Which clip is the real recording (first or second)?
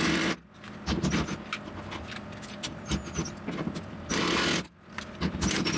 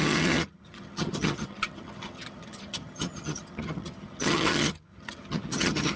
first